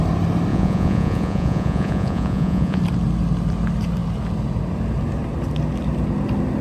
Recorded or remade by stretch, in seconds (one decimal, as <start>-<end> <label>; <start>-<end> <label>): 0.0-0.5 recorded; 0.5-2.8 remade; 2.8-6.6 recorded